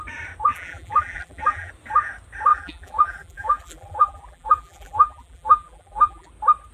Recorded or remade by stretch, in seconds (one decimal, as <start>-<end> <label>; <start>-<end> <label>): 0.0-0.5 recorded; 0.5-1.7 remade; 1.7-2.5 recorded; 2.5-6.3 remade; 6.3-6.7 recorded